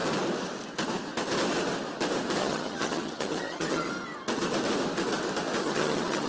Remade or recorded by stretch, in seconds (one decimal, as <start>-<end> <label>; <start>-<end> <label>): 0.0-2.4 recorded; 2.4-3.9 remade; 3.9-5.6 recorded; 5.6-6.3 remade

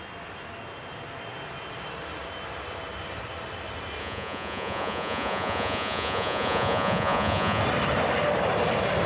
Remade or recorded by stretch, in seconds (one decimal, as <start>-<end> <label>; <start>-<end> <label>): 0.0-4.0 recorded; 4.0-7.6 remade; 7.6-9.1 recorded

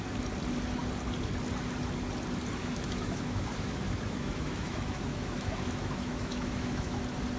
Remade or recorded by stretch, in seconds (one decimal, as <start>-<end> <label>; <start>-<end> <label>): 0.0-2.6 recorded; 2.6-7.0 remade; 7.0-7.4 recorded

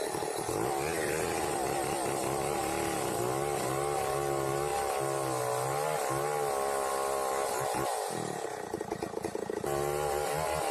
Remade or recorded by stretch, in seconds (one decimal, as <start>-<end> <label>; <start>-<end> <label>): 0.0-10.7 recorded

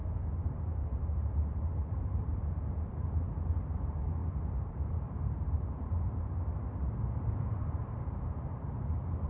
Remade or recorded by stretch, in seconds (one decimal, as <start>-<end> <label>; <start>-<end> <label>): 0.0-4.2 remade; 4.2-4.7 recorded; 4.7-6.4 remade; 6.4-7.2 recorded; 7.2-9.3 remade

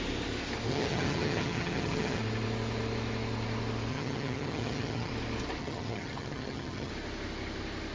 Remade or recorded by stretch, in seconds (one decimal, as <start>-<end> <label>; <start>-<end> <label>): 0.0-0.7 recorded; 0.7-2.2 remade; 2.2-3.9 recorded; 3.9-5.1 remade; 5.1-5.6 recorded; 5.6-6.9 remade; 6.9-7.9 recorded

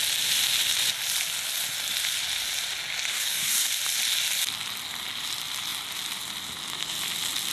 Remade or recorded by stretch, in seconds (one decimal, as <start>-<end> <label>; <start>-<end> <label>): 0.0-3.1 recorded; 3.1-3.7 remade; 3.7-7.5 recorded